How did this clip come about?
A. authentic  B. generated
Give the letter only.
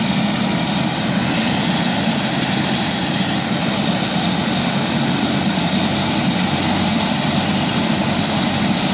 A